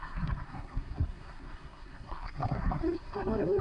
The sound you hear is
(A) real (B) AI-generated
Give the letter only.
B